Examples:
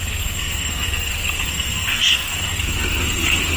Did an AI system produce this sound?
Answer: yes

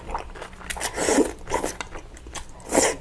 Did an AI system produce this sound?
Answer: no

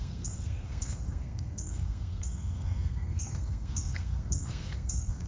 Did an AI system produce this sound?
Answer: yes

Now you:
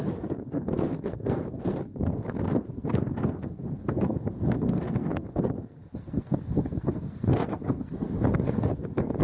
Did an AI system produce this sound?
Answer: yes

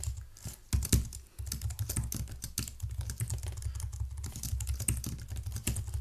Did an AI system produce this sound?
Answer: no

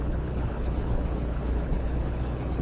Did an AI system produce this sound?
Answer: yes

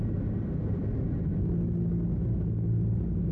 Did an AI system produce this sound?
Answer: no